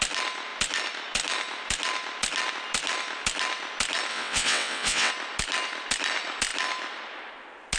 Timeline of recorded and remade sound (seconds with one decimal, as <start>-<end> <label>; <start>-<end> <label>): 0.0-4.1 recorded; 4.1-5.1 remade; 5.1-7.8 recorded